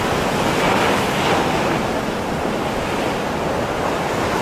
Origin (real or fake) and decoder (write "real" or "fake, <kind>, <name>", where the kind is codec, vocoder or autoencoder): real